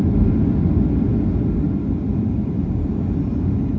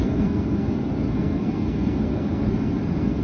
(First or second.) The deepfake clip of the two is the second